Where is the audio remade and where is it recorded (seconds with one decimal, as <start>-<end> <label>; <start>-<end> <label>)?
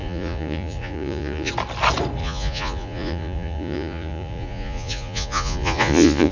0.0-1.5 remade; 1.5-2.2 recorded; 2.2-6.3 remade